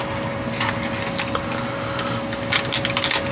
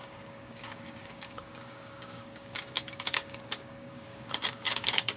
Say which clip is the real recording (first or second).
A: first